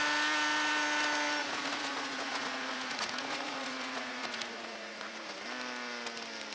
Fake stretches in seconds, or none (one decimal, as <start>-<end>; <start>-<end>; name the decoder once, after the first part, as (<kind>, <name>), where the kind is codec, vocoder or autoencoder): 1.4-5.3 (vocoder, Vocos)